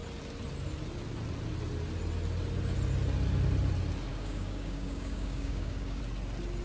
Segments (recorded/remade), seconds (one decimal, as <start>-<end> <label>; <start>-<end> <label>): 0.0-4.1 recorded; 4.1-6.0 remade; 6.0-6.6 recorded